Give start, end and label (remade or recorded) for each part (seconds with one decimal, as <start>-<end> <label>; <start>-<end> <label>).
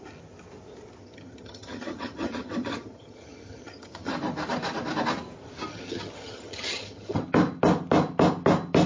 0.0-1.0 recorded; 1.0-4.1 remade; 4.1-5.7 recorded; 5.7-7.2 remade; 7.2-8.9 recorded